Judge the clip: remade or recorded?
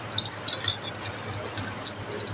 recorded